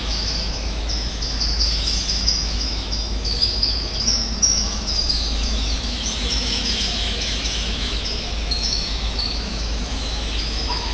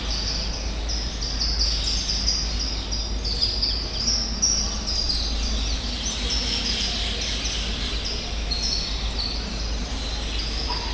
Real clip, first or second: second